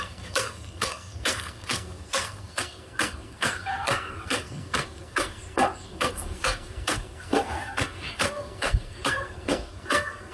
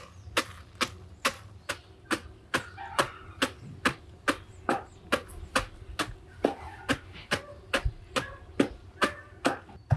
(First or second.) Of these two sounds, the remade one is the first